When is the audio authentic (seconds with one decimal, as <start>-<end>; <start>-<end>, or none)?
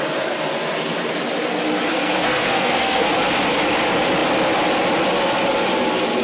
0.0-1.9; 3.1-6.2